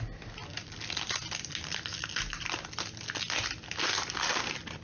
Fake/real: real